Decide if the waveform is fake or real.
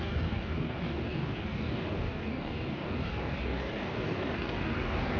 fake